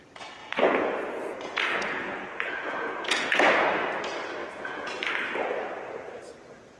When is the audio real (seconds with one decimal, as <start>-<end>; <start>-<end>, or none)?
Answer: 0.0-0.4; 3.9-4.4; 4.9-6.8